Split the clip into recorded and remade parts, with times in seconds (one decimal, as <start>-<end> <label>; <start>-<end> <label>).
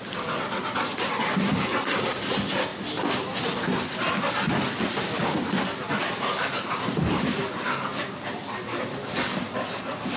0.0-10.2 recorded